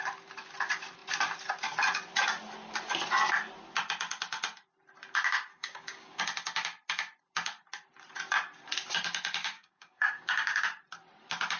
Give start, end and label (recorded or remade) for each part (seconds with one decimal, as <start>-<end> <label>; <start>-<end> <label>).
0.0-5.5 recorded; 5.5-6.2 remade; 6.2-9.4 recorded; 9.4-10.6 remade; 10.6-11.6 recorded